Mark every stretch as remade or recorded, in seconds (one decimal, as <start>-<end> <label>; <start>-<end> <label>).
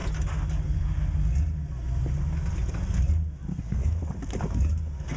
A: 0.0-3.5 recorded; 3.5-4.0 remade; 4.0-5.2 recorded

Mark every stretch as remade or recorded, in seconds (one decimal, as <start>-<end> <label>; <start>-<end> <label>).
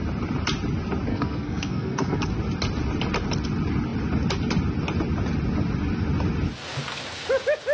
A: 0.0-1.1 recorded; 1.1-2.3 remade; 2.3-7.7 recorded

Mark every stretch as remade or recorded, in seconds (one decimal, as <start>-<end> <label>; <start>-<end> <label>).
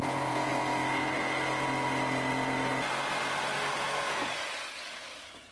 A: 0.0-0.5 remade; 0.5-3.8 recorded; 3.8-5.5 remade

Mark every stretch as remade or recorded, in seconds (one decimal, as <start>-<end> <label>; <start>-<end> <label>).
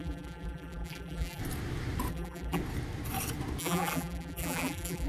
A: 0.0-1.4 remade; 1.4-2.1 recorded; 2.1-2.6 remade; 2.6-3.6 recorded; 3.6-5.1 remade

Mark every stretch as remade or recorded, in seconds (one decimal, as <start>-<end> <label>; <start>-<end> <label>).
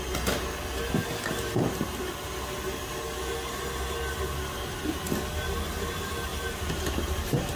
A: 0.0-6.3 recorded; 6.3-7.6 remade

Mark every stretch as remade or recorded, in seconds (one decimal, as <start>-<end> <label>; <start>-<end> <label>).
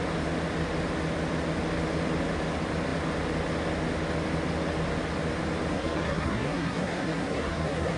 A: 0.0-5.7 recorded; 5.7-8.0 remade